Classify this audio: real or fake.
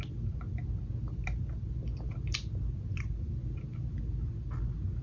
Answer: real